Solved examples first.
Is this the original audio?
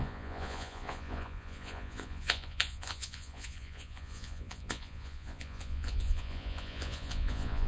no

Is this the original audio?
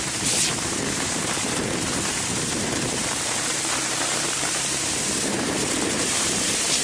no